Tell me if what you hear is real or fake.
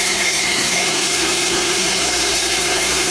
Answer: fake